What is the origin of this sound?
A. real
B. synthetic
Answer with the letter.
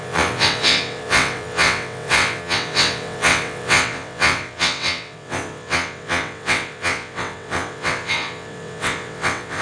B